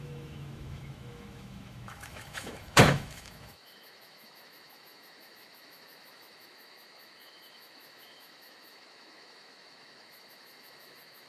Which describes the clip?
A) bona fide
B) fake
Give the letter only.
B